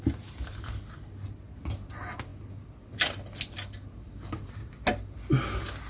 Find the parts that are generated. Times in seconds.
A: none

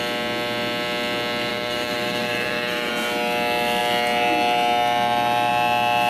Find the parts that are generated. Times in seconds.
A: 1.5-2.9 (vocoder, BigVGAN v2)